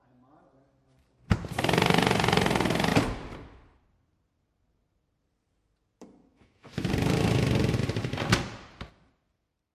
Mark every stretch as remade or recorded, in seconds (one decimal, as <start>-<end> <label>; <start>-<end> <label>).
0.0-6.3 recorded; 6.3-6.9 remade; 6.9-9.7 recorded